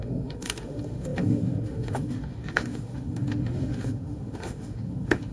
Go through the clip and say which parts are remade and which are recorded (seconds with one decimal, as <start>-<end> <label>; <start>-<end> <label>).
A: 0.0-5.3 remade